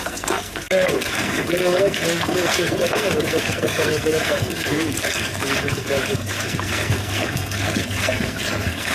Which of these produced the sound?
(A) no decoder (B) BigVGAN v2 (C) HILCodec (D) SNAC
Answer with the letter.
D